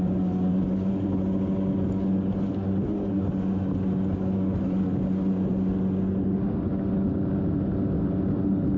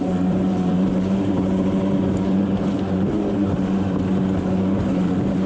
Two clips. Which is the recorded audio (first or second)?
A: first